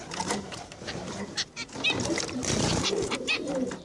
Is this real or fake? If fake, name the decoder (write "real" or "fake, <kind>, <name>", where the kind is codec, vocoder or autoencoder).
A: fake, vocoder, BigVGAN v2